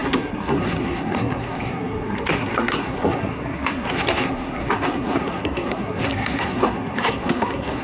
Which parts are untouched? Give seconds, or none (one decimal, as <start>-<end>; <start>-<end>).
none